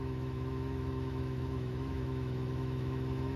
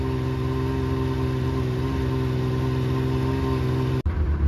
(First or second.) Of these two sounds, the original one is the second